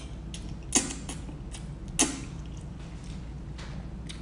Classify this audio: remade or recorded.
recorded